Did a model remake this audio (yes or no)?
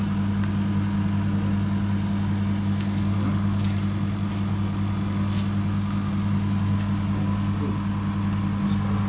no